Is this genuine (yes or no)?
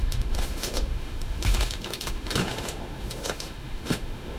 no